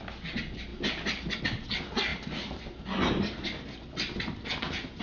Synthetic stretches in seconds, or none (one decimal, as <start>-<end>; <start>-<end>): none

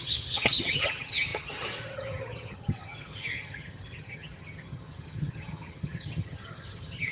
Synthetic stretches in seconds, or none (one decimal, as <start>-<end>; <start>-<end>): 0.0-7.1

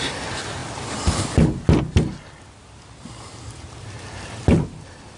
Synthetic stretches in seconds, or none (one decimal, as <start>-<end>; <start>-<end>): none

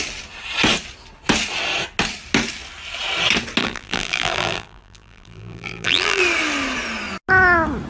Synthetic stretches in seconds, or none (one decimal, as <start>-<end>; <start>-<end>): 3.6-6.2

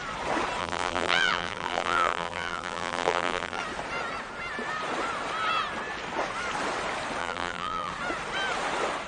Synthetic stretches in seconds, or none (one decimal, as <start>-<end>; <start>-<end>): 0.6-3.6; 7.2-7.9